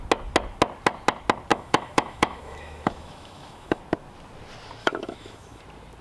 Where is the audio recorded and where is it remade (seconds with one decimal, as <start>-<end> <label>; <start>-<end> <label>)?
0.0-1.5 recorded; 1.5-3.8 remade; 3.8-4.8 recorded; 4.8-5.6 remade; 5.6-6.0 recorded